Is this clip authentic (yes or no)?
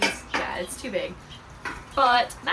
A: no